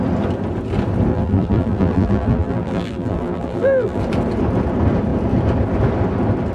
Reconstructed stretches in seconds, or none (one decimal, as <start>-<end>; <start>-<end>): 1.1-4.0